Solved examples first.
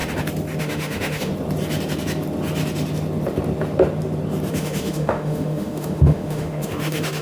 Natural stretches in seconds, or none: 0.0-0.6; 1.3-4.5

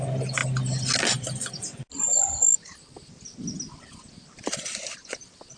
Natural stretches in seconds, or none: 0.0-5.6

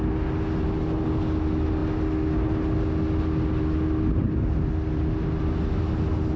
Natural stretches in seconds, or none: 0.0-6.4

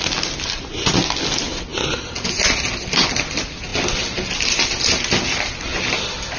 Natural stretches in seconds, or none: 0.0-6.4

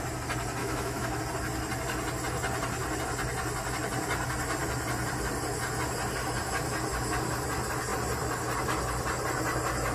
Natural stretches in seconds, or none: 0.0-0.6; 1.2-9.9

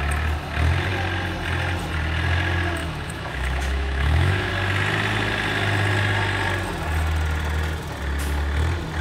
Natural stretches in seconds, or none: 0.0-2.8; 4.5-9.0

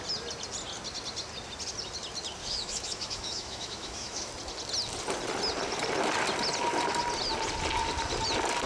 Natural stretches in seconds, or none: 0.0-2.4; 4.3-8.7